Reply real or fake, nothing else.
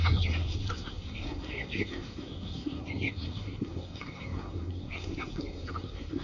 fake